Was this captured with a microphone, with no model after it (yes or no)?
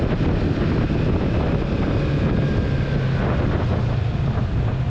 yes